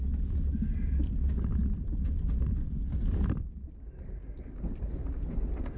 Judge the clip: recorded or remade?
recorded